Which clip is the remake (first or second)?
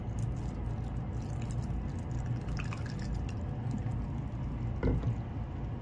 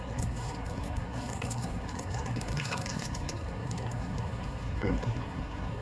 second